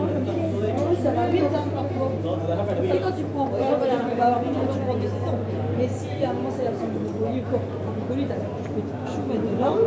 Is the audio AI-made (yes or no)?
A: no